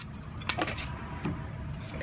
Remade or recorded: recorded